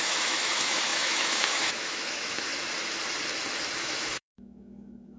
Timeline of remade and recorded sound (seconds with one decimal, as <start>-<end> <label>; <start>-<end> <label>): 0.0-2.5 remade; 2.5-3.8 recorded; 3.8-5.2 remade